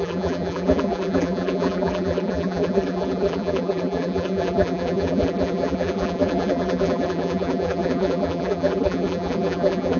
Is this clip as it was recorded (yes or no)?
no